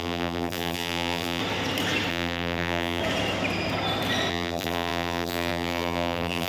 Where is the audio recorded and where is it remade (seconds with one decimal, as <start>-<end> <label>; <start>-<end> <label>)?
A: 0.0-1.4 remade; 1.4-2.1 recorded; 2.1-3.0 remade; 3.0-4.3 recorded; 4.3-6.5 remade